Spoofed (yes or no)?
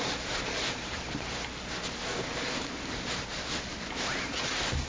no